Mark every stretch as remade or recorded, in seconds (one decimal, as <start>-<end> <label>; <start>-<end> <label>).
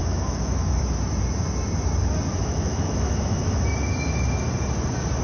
0.0-0.8 remade; 0.8-2.3 recorded; 2.3-3.6 remade; 3.6-5.2 recorded